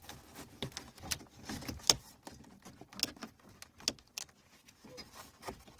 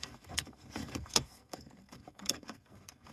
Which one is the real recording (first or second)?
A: first